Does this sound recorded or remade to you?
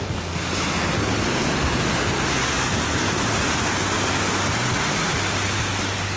recorded